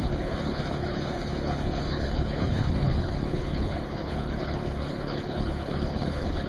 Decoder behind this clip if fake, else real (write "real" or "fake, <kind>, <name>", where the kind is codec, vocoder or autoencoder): fake, codec, HILCodec